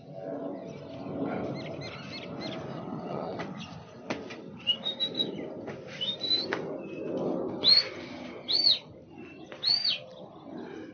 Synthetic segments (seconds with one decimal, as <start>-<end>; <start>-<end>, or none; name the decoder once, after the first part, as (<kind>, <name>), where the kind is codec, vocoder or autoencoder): 2.7-3.4 (vocoder, WaveNeXt)